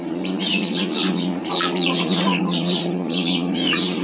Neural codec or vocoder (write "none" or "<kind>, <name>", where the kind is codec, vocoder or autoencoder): vocoder, Vocos